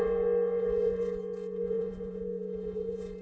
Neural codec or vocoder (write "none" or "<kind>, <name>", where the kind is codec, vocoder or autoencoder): vocoder, Vocos